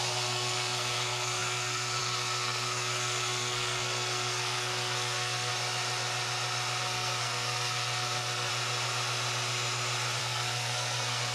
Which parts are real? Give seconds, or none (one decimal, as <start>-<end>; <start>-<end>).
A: 5.5-6.8; 8.5-10.2